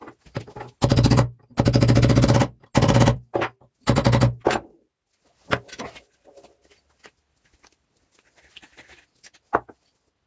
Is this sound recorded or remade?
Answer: recorded